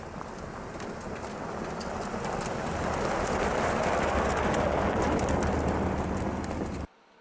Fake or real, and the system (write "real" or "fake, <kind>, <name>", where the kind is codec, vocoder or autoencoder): real